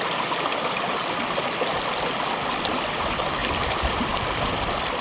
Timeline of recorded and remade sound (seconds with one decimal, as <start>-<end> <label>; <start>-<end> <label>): 0.0-3.4 recorded; 3.4-4.1 remade; 4.1-5.0 recorded